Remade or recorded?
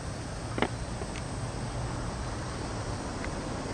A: recorded